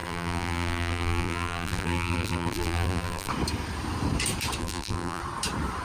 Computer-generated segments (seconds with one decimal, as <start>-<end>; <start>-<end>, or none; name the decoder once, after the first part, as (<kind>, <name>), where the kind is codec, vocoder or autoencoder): 0.0-3.3 (vocoder, BigVGAN v2); 4.6-5.2